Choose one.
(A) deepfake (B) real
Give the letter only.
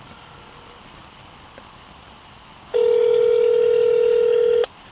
B